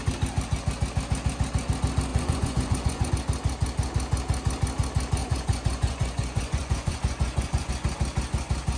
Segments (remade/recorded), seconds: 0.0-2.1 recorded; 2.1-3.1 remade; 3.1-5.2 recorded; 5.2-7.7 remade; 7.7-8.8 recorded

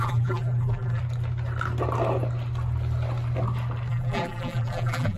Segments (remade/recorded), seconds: 0.0-1.0 remade; 1.0-3.9 recorded; 3.9-5.2 remade

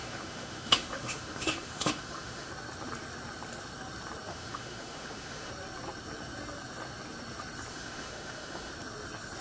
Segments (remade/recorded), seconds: 0.0-2.5 remade; 2.5-4.3 recorded; 4.3-5.5 remade; 5.5-7.7 recorded; 7.7-8.7 remade; 8.7-9.4 recorded

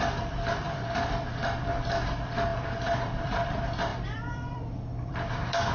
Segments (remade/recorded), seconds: 0.0-5.7 remade